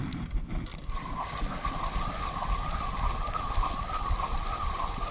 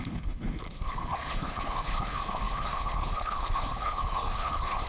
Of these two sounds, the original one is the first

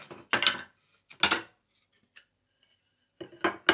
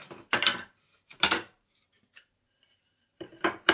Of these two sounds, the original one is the first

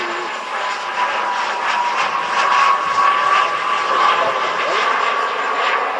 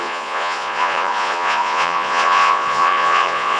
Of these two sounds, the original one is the first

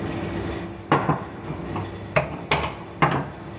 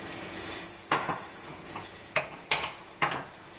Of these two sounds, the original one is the first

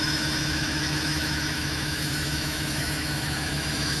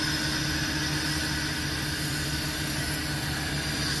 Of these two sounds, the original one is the second